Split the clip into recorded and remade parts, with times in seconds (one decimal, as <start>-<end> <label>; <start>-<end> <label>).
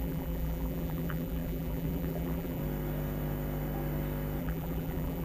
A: 0.0-2.6 remade; 2.6-4.4 recorded; 4.4-5.2 remade